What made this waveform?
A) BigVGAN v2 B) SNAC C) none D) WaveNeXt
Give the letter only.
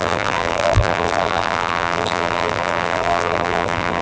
A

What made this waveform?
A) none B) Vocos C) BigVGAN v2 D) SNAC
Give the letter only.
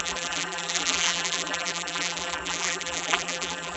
C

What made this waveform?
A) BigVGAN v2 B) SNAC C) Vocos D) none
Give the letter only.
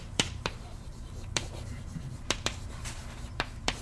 A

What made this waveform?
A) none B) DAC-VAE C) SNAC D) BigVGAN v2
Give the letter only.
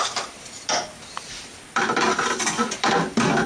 A